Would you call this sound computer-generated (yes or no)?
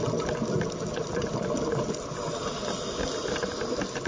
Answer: no